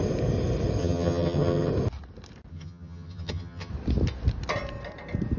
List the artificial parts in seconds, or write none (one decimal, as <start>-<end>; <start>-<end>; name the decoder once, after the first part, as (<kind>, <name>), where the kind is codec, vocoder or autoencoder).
0.8-1.7 (vocoder, HiFi-GAN); 2.5-3.7